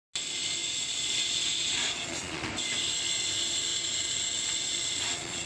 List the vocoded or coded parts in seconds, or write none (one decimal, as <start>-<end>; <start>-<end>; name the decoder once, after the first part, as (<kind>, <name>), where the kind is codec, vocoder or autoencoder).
0.6-2.5 (vocoder, Vocos); 3.7-5.5